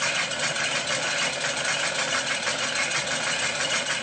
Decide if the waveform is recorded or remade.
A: recorded